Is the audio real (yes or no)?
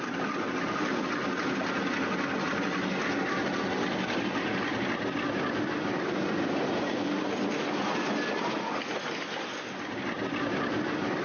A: yes